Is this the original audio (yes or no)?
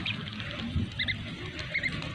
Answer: yes